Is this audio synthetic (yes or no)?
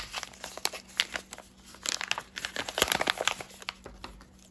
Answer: no